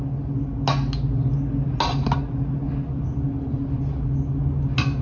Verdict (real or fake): real